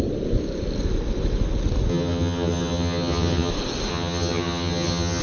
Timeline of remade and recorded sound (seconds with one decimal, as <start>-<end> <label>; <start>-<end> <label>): 0.0-1.9 recorded; 1.9-3.5 remade; 3.5-3.9 recorded; 3.9-5.2 remade